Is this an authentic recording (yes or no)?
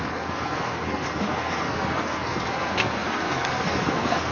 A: no